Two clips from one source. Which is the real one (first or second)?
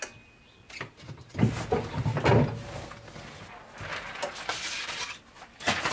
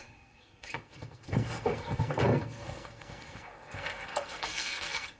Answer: first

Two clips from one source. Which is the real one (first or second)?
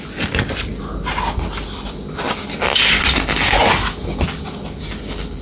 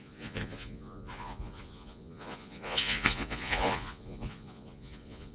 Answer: first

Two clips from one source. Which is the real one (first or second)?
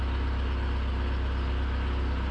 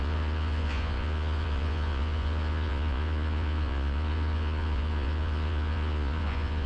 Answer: first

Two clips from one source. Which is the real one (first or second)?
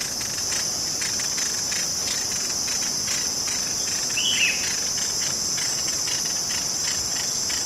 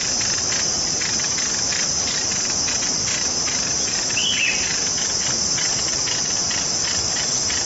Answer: first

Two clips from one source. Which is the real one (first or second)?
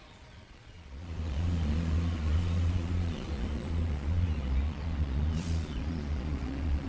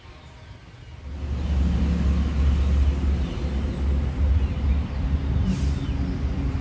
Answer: second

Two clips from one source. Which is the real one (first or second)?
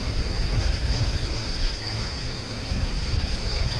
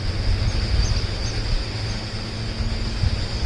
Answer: second